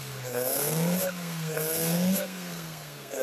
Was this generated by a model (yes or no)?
yes